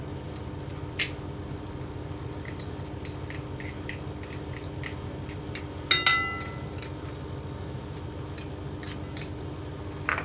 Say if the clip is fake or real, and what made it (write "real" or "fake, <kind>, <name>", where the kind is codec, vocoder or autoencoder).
real